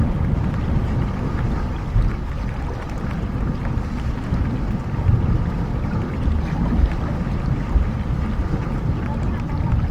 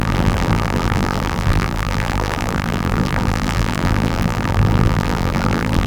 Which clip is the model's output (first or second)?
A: second